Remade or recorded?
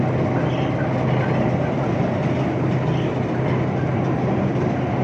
recorded